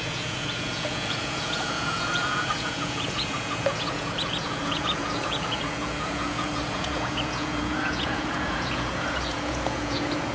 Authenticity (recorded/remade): remade